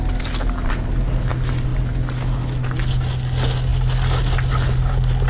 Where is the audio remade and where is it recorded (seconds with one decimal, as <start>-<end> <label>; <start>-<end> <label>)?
0.0-5.3 recorded